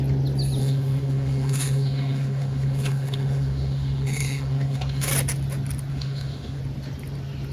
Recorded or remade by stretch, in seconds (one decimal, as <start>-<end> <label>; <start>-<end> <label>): 0.0-0.6 recorded; 0.6-5.1 remade; 5.1-5.9 recorded; 5.9-6.6 remade; 6.6-7.5 recorded